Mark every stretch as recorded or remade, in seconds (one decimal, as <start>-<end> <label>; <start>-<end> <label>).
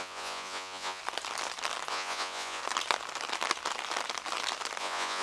0.0-1.0 remade; 1.0-1.9 recorded; 1.9-2.6 remade; 2.6-4.8 recorded; 4.8-5.2 remade